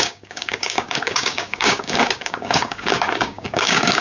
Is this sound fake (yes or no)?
yes